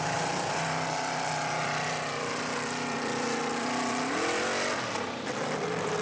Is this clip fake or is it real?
fake